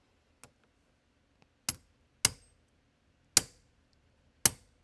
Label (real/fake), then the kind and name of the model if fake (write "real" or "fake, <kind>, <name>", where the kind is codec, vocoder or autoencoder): real